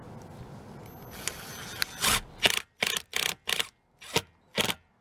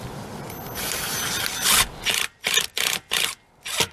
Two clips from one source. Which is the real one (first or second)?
first